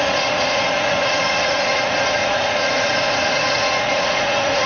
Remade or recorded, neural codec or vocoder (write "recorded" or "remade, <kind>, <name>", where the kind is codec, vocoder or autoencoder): remade, vocoder, Vocos